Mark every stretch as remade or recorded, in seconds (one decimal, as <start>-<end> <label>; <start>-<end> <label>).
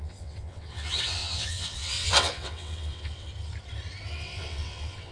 0.0-3.3 remade; 3.3-4.1 recorded; 4.1-5.1 remade